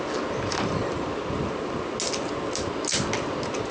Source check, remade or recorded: recorded